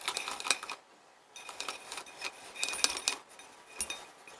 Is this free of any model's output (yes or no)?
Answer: yes